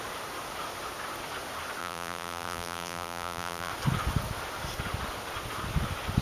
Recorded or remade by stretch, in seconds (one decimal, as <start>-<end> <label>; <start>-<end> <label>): 0.0-1.8 recorded; 1.8-3.7 remade; 3.7-6.2 recorded